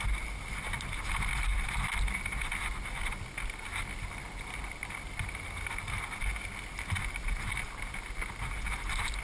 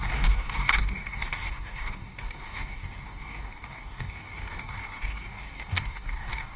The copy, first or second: second